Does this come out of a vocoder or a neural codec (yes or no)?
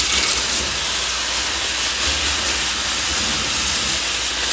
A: no